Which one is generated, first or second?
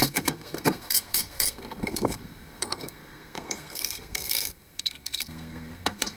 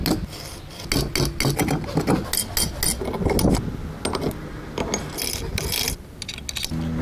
first